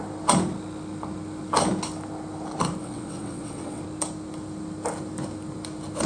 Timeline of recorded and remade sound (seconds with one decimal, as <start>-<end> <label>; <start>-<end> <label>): 0.0-2.8 recorded; 2.8-3.8 remade; 3.8-6.1 recorded